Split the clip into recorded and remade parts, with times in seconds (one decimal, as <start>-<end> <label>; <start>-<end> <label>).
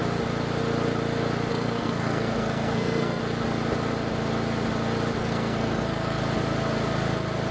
0.0-1.5 recorded; 1.5-3.2 remade; 3.2-5.2 recorded; 5.2-6.2 remade; 6.2-7.5 recorded